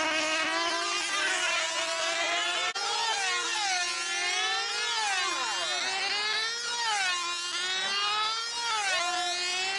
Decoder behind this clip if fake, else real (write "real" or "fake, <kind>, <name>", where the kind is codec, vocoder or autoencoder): real